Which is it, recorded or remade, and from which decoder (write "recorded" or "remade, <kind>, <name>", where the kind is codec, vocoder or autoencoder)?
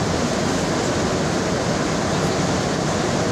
recorded